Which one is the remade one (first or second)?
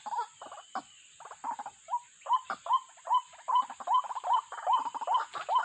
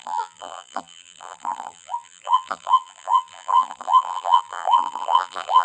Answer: second